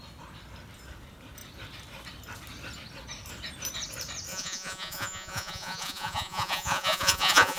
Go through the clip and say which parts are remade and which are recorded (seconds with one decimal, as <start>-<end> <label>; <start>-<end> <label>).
0.0-4.3 recorded; 4.3-7.6 remade